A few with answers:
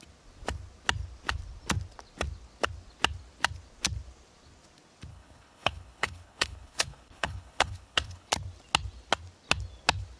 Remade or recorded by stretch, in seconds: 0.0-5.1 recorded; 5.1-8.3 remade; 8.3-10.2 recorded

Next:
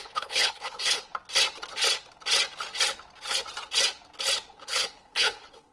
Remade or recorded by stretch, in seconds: 0.0-1.1 remade; 1.1-4.5 recorded; 4.5-5.7 remade

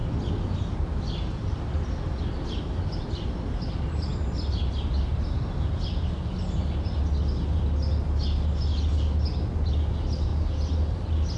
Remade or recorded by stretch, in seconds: 0.0-11.4 recorded